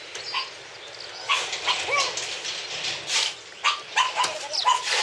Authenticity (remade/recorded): recorded